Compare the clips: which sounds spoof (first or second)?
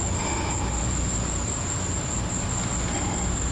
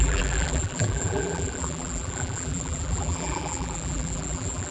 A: second